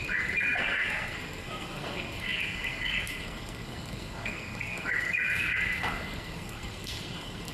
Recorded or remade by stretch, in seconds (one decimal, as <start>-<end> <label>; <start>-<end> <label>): 0.0-7.5 remade